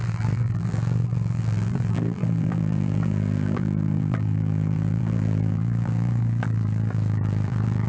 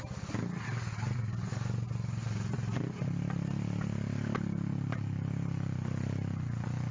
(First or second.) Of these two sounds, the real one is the second